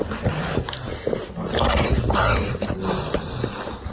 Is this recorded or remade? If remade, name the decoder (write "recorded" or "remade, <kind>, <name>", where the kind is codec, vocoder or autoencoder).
recorded